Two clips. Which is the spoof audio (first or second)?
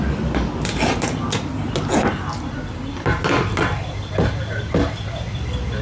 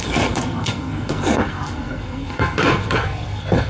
second